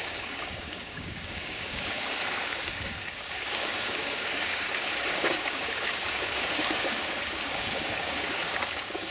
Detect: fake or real fake